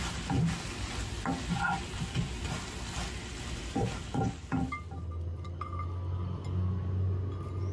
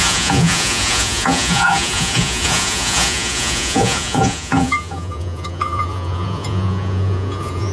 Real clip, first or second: first